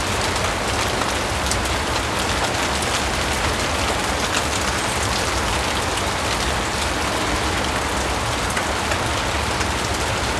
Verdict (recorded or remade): recorded